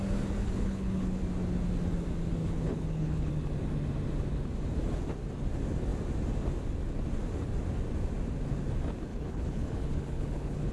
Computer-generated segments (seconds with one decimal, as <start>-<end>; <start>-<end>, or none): 0.4-1.2; 2.4-3.3; 9.1-10.7